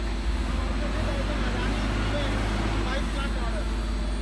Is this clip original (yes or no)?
yes